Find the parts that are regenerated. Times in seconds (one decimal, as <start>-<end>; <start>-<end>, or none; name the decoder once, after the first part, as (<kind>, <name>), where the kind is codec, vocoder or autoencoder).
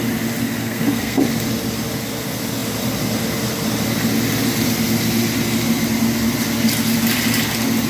0.4-1.2 (codec, SNAC)